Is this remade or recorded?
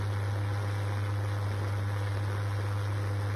recorded